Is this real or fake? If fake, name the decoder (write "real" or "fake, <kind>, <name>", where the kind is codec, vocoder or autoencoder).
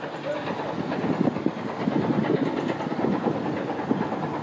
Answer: real